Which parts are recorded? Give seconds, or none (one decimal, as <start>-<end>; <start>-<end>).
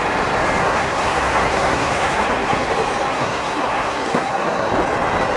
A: 0.0-0.6; 2.7-3.1; 4.7-5.4